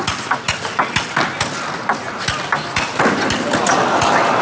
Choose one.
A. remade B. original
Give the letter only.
B